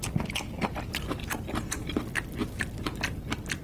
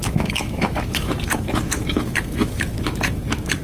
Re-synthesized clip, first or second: second